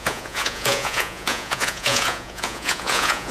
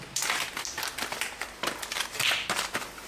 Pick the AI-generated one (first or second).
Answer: first